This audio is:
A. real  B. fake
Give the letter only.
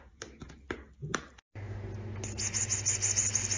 A